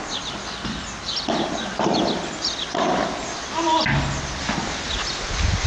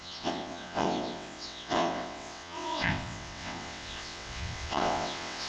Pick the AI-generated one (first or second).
second